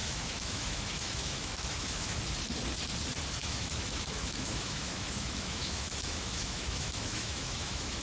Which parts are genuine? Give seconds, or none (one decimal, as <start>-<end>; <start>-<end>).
2.2-3.4